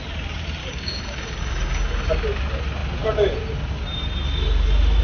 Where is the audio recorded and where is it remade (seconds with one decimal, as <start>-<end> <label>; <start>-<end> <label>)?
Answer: 0.0-0.6 recorded; 0.6-2.1 remade; 2.1-5.0 recorded